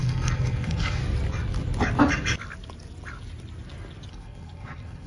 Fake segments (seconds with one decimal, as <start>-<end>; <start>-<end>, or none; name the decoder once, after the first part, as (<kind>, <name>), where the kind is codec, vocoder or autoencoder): 0.0-1.0 (codec, SNAC); 4.1-5.1